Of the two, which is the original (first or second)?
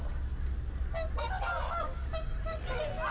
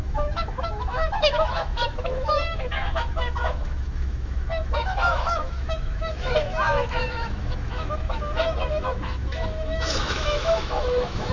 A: first